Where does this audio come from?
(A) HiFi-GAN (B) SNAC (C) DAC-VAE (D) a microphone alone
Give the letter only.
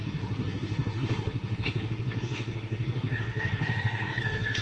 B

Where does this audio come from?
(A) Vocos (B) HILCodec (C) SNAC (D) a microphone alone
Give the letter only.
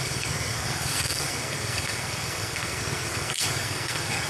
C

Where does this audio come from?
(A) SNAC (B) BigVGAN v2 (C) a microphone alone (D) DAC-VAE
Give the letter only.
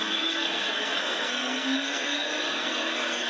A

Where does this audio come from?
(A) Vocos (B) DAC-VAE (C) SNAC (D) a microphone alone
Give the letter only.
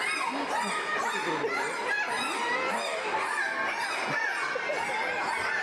D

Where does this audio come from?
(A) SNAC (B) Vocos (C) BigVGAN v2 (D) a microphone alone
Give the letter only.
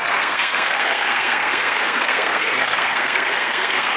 A